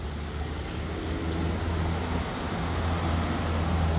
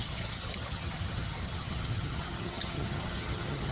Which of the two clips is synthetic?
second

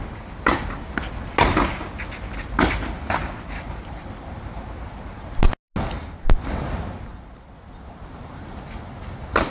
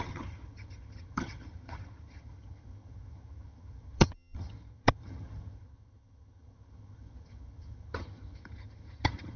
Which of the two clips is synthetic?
second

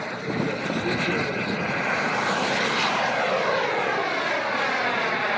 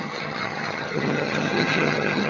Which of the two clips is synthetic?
second